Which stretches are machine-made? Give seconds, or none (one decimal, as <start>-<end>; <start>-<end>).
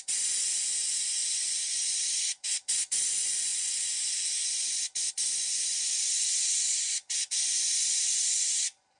0.0-9.0